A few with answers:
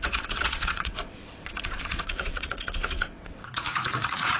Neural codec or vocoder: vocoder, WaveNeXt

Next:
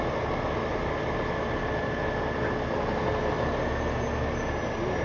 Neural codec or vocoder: none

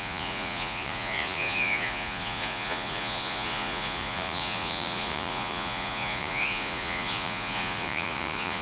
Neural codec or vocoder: vocoder, Vocos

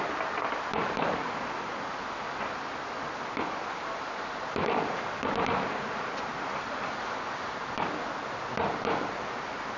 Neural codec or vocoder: none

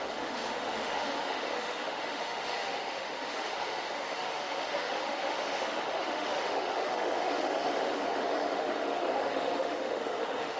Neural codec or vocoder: autoencoder, DAC-VAE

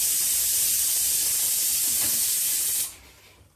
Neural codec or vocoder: none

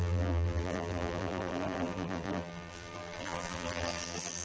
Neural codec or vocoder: vocoder, BigVGAN v2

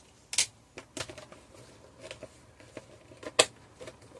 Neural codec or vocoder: none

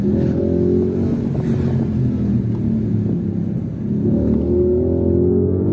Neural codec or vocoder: none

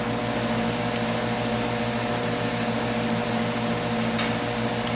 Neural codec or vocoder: none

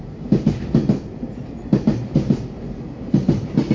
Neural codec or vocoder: none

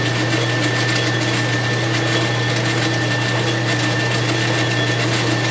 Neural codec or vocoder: none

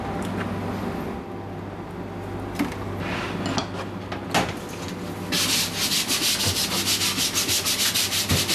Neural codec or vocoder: none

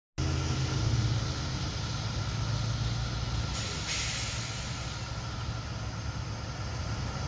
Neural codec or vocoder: none